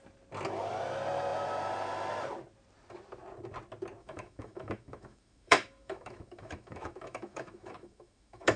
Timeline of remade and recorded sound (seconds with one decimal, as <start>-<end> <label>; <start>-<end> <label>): 0.0-4.0 recorded; 4.0-8.6 remade